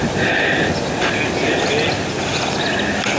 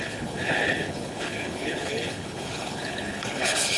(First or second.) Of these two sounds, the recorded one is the first